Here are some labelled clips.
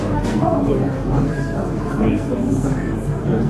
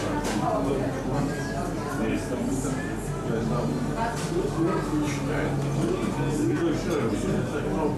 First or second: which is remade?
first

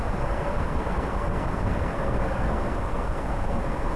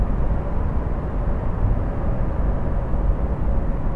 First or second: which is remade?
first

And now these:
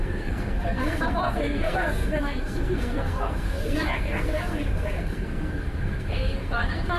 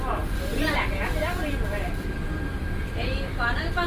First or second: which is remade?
first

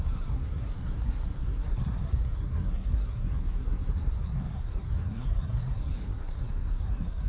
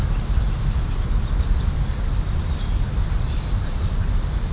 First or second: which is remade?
first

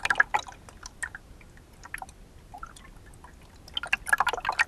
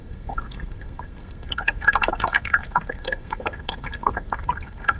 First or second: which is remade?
second